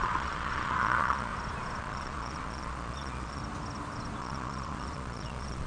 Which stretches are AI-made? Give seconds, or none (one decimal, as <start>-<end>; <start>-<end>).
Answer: 0.0-1.3; 1.8-3.4; 4.2-5.7

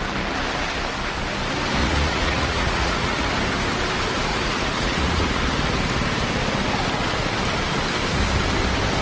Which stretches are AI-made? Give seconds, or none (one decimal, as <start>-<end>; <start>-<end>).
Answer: 1.8-3.3; 4.3-5.4

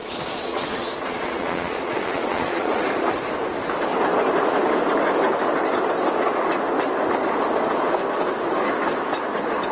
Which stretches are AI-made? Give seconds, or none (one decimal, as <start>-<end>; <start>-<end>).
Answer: 0.0-2.8

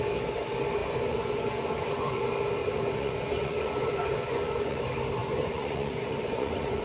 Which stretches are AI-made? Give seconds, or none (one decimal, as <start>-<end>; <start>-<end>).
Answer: 0.8-2.2; 2.6-4.8; 5.2-6.8

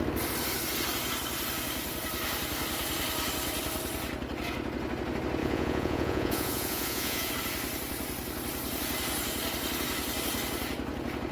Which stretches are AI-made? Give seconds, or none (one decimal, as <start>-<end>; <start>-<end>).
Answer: 5.4-7.3

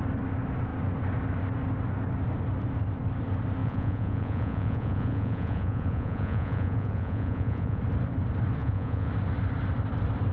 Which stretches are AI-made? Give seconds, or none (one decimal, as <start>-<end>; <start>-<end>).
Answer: 3.6-7.8; 8.6-9.1

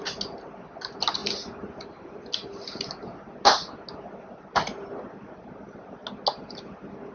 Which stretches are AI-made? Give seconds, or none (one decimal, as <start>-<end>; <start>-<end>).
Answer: none

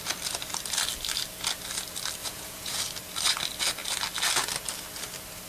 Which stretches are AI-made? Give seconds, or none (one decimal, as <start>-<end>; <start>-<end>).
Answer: 2.2-2.8